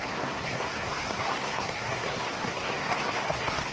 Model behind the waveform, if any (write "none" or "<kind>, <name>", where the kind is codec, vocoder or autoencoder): codec, SNAC